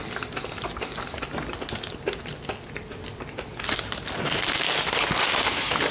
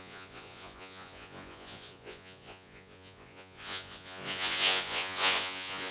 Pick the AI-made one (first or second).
second